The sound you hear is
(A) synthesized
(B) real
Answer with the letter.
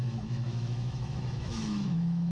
A